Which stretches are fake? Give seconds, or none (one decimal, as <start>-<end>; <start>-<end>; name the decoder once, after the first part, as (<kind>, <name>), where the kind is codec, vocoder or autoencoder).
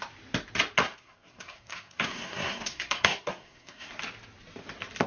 0.8-3.9 (codec, SNAC)